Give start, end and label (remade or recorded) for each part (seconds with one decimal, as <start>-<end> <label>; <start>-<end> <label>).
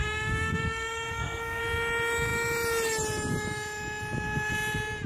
0.0-1.6 remade; 1.6-5.1 recorded